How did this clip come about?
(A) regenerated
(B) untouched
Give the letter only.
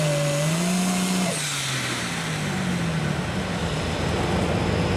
B